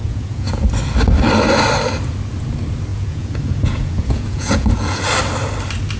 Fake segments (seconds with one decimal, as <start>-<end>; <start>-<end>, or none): 0.0-0.7; 2.9-5.0